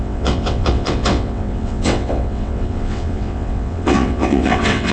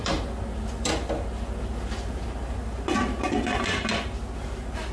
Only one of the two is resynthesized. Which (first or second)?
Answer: first